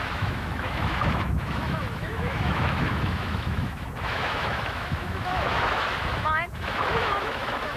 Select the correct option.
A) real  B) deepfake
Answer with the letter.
B